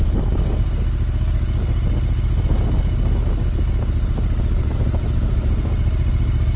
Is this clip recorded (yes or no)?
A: yes